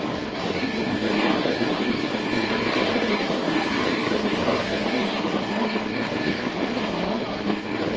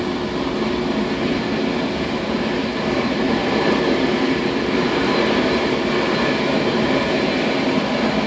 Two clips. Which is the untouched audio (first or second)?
second